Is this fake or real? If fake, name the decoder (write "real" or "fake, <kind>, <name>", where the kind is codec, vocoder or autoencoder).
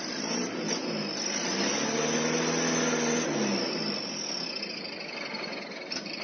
real